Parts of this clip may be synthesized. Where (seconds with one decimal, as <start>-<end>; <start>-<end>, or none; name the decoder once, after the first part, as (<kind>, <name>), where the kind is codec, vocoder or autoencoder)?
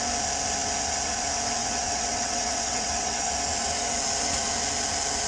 1.6-3.3 (vocoder, WaveNeXt)